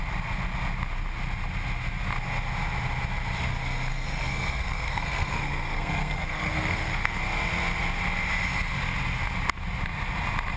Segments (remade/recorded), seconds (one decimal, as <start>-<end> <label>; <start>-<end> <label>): 0.0-3.9 recorded; 3.9-7.2 remade; 7.2-10.6 recorded